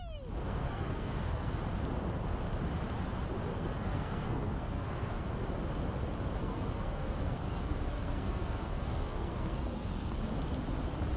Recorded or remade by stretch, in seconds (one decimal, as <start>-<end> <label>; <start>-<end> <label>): 0.0-0.4 recorded; 0.4-1.6 remade; 1.6-3.5 recorded; 3.5-5.3 remade; 5.3-6.4 recorded; 6.4-10.1 remade; 10.1-11.2 recorded